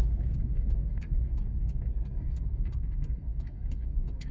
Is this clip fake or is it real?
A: fake